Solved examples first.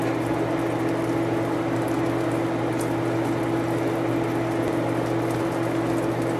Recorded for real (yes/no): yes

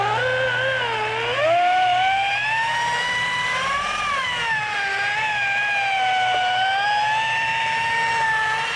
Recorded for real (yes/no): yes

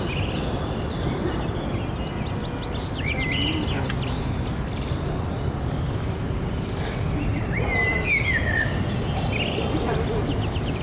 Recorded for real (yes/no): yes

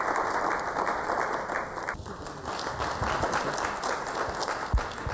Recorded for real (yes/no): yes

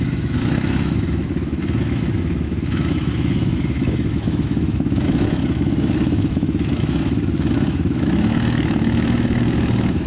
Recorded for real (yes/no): no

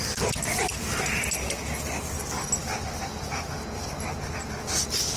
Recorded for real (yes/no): yes